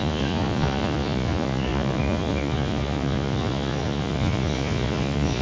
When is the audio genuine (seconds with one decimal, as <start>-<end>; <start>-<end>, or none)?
none